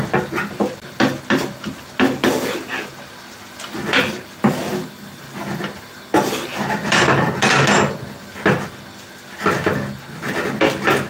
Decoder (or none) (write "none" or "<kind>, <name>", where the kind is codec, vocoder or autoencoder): none